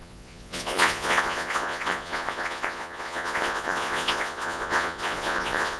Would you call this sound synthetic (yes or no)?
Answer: yes